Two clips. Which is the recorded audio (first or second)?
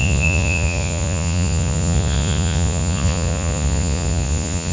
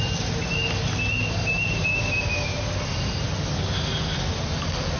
second